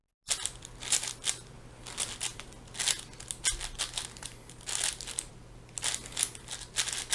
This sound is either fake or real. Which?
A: real